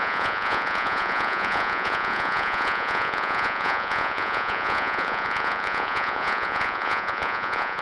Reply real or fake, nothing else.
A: fake